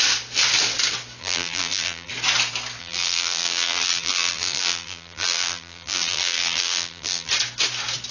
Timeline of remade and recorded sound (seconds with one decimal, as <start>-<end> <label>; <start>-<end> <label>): 0.0-1.2 recorded; 1.2-2.1 remade; 2.1-2.8 recorded; 2.8-7.3 remade; 7.3-8.1 recorded